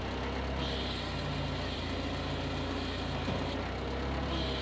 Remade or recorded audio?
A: recorded